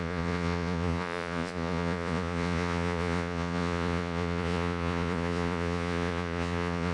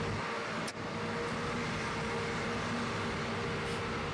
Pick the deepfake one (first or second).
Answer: first